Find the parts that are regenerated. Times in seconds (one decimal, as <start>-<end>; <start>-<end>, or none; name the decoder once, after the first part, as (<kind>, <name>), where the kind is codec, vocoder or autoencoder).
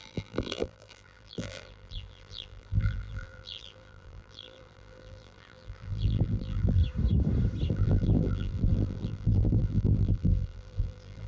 0.0-6.8 (vocoder, BigVGAN v2); 7.7-11.3